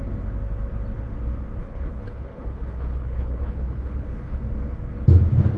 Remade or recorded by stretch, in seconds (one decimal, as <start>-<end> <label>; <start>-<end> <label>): 0.0-1.6 recorded; 1.6-4.4 remade; 4.4-5.6 recorded